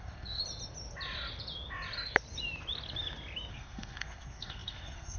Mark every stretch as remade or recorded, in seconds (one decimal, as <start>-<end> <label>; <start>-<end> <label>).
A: 0.0-0.4 remade; 0.4-3.5 recorded; 3.5-5.2 remade